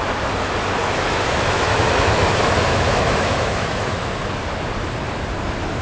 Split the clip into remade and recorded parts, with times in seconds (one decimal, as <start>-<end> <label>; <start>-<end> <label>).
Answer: 0.0-0.8 recorded; 0.8-2.3 remade; 2.3-2.7 recorded; 2.7-4.1 remade; 4.1-5.8 recorded